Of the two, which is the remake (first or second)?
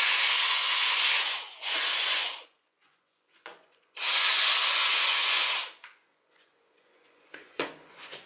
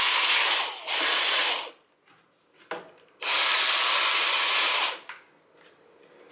first